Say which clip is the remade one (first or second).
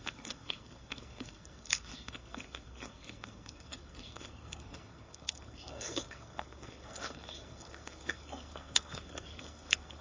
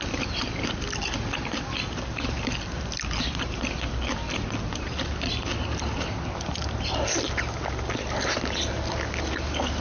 first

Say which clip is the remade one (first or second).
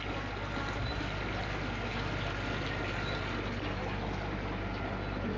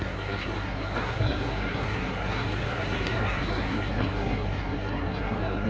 second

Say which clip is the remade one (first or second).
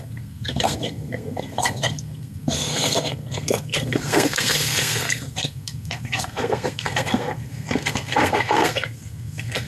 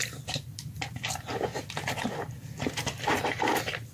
first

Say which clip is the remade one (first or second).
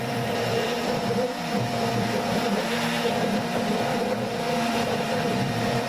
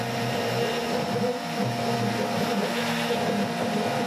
first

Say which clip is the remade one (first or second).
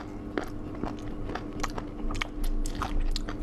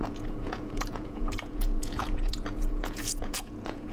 second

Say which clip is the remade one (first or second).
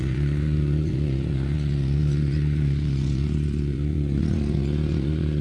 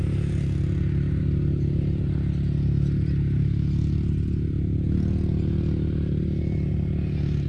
first